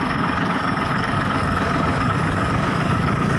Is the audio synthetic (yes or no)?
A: yes